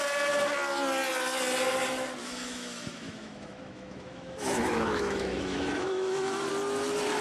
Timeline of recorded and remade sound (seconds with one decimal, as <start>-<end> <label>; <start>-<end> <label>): 0.0-2.2 recorded; 2.2-6.5 remade; 6.5-7.2 recorded